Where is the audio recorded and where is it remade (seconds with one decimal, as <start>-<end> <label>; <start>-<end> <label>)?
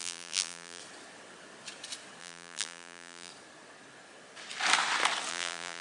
0.0-0.8 remade; 0.8-2.2 recorded; 2.2-3.3 remade; 3.3-5.3 recorded; 5.3-5.8 remade